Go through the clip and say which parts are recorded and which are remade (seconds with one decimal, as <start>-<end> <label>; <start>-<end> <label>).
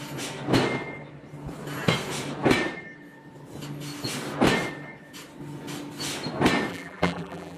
0.0-6.7 recorded; 6.7-7.6 remade